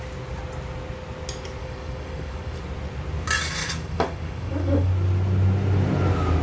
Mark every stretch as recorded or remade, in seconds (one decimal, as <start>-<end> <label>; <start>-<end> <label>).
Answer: 0.0-1.6 recorded; 1.6-2.6 remade; 2.6-3.6 recorded; 3.6-4.9 remade; 4.9-6.4 recorded